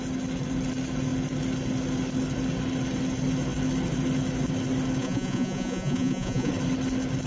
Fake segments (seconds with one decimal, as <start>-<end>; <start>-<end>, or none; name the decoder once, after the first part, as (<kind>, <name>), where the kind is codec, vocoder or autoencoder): 5.0-6.5 (vocoder, Vocos)